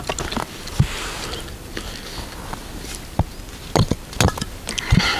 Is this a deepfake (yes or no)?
no